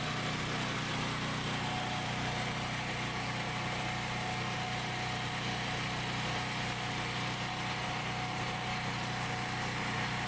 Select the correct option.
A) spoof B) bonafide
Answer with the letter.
B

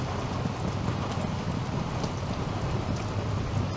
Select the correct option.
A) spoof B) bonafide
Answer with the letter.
B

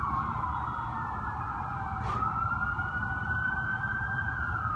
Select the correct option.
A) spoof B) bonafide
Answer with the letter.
A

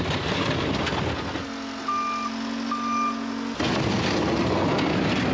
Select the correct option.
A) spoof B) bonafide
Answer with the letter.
B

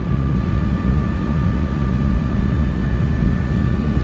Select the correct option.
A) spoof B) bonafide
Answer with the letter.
A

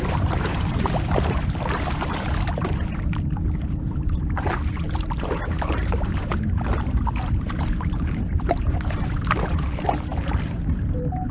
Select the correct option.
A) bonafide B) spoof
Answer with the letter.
B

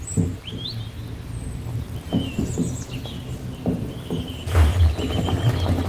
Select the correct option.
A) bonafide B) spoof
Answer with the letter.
A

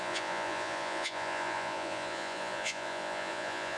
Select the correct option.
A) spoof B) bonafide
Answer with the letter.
A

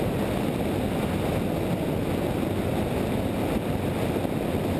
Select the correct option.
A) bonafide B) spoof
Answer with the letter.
A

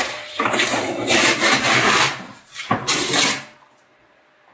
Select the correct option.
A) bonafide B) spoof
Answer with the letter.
B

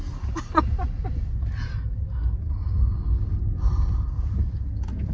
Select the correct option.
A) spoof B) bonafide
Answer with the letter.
B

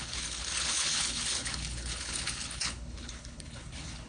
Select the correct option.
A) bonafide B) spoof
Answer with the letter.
B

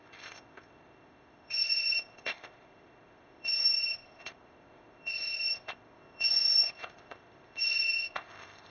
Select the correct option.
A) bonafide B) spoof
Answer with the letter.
B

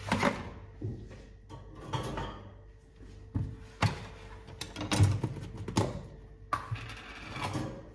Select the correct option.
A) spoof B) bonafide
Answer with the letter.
B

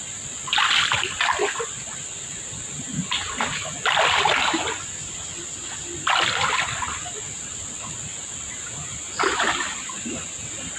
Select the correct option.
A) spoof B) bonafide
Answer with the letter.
B